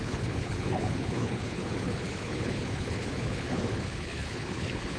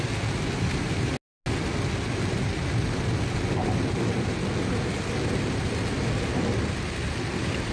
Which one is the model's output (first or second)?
first